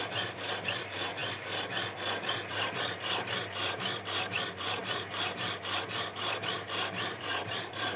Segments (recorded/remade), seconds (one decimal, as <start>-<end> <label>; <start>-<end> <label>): 0.0-1.2 remade; 1.2-2.5 recorded; 2.5-8.0 remade